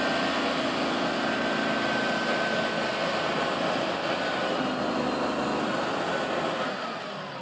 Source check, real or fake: real